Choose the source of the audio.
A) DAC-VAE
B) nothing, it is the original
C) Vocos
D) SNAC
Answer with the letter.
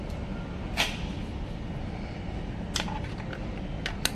B